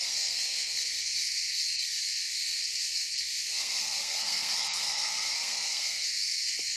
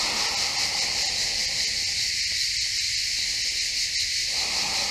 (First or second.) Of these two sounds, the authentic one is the second